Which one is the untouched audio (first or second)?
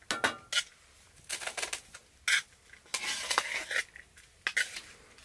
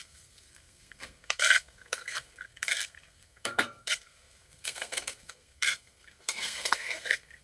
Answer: first